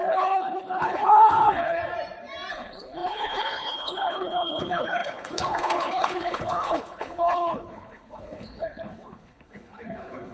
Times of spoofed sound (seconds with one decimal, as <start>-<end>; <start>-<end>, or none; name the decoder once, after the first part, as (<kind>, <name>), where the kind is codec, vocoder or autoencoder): 0.0-1.8 (codec, HILCodec); 2.5-10.3